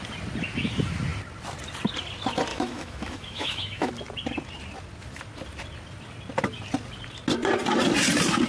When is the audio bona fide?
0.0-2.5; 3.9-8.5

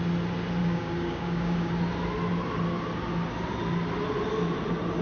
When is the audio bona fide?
0.0-0.6; 1.7-5.0